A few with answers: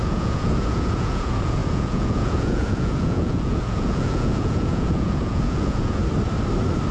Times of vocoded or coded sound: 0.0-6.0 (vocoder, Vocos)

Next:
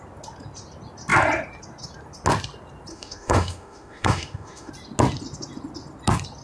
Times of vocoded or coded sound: 2.9-4.7 (autoencoder, DAC-VAE)

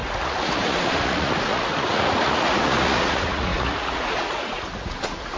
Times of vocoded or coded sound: 0.0-5.4 (vocoder, Vocos)

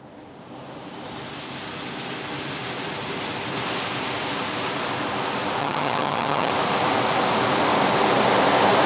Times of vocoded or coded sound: 5.6-6.5 (vocoder, HiFi-GAN)

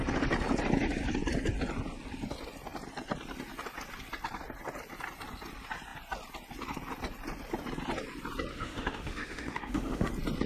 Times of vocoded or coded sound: 8.5-10.1 (autoencoder, DAC-VAE)